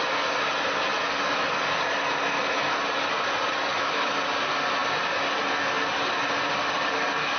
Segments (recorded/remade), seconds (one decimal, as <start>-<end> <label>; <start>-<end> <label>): 0.0-3.7 recorded; 3.7-4.2 remade; 4.2-7.4 recorded